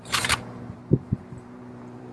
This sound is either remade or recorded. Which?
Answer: remade